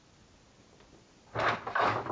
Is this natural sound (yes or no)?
yes